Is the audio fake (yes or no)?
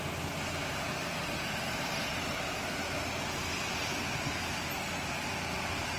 no